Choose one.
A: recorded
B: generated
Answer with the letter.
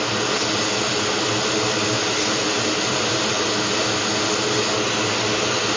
A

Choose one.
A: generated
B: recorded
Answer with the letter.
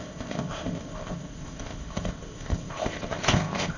A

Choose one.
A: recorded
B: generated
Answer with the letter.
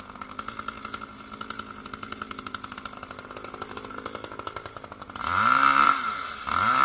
A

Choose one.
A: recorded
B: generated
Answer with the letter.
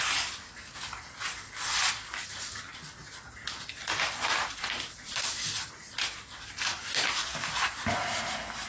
A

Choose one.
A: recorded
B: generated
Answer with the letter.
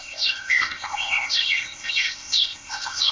B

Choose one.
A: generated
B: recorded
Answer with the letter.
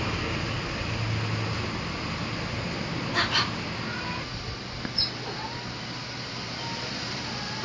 B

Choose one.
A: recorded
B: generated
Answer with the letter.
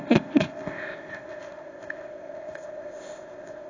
B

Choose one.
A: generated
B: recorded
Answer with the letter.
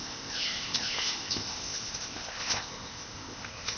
A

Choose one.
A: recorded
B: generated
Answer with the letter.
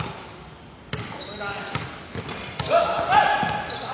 A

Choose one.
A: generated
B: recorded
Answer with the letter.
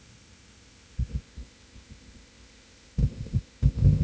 A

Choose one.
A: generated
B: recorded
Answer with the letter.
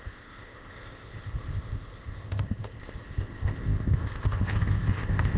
A